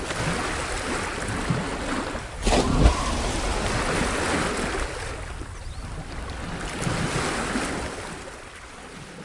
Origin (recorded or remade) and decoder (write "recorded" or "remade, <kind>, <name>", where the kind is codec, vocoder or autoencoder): recorded